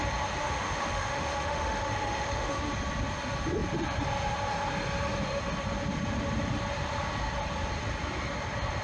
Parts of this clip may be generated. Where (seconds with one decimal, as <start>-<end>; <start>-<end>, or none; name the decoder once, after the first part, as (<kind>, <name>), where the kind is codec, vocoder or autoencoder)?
0.4-2.7 (autoencoder, DAC-VAE)